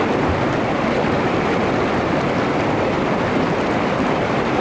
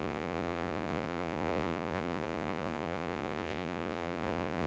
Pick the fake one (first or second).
second